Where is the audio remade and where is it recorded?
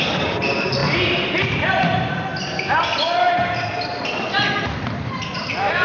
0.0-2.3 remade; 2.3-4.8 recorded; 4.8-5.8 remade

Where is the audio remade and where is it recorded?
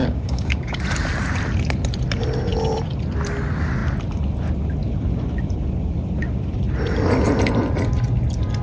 0.0-0.8 remade; 0.8-8.6 recorded